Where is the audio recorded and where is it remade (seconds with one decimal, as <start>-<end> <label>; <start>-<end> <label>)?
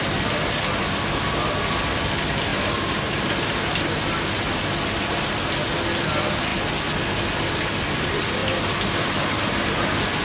0.0-10.2 recorded